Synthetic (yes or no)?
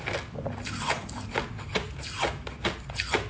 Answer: no